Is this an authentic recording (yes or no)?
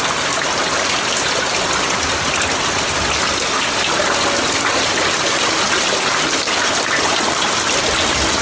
yes